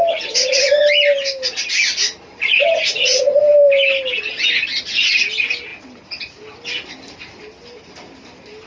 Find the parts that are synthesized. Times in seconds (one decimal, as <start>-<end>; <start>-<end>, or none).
none